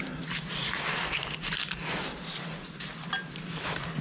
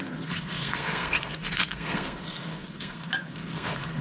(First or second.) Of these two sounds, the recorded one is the first